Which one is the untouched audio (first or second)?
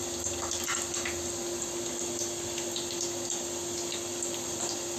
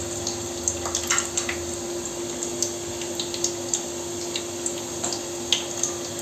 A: second